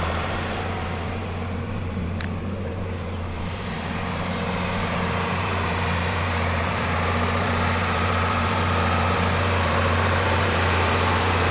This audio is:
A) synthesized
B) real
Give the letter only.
A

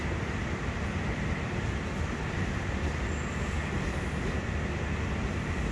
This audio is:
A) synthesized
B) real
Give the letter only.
B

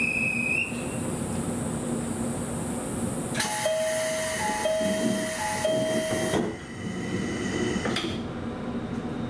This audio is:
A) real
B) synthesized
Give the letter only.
A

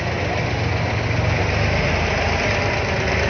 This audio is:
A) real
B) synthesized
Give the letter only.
A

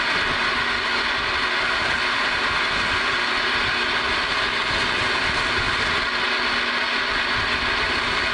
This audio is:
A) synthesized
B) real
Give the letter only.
B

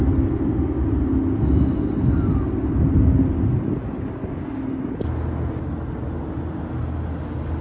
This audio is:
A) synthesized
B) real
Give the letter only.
B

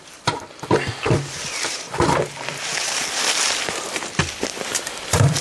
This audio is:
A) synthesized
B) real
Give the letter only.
A